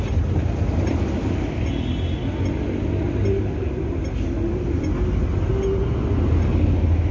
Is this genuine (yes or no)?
yes